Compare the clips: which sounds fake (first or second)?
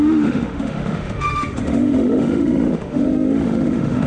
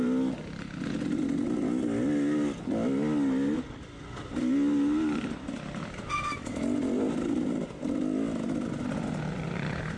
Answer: first